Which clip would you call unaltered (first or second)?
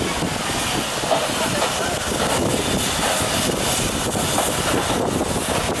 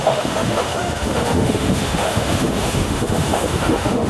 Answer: first